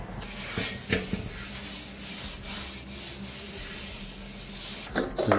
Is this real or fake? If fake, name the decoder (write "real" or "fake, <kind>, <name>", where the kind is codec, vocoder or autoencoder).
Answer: real